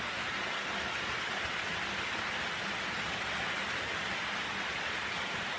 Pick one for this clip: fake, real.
real